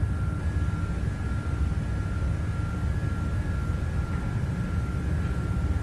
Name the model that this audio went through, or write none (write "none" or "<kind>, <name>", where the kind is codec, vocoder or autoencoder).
none